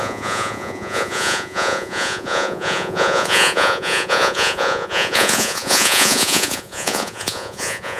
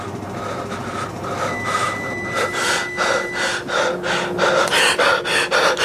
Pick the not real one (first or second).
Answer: first